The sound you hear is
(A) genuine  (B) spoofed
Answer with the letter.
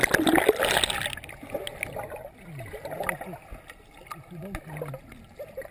A